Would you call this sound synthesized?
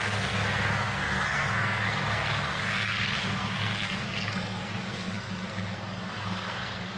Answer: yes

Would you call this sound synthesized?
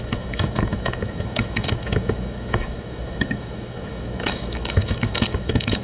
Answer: yes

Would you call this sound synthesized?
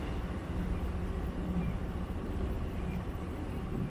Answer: no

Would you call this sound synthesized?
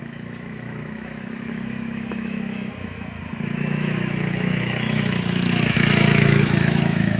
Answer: yes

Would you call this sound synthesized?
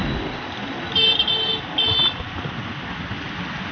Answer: no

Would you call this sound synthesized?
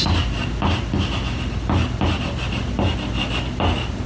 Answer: no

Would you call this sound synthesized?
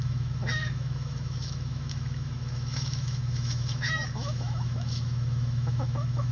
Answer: yes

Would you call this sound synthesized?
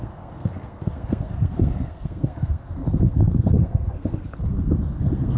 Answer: yes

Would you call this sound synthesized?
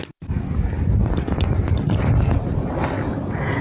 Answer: no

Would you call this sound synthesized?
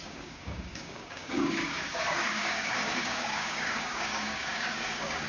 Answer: yes